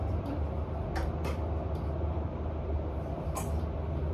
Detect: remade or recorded recorded